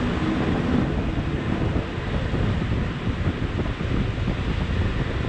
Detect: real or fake real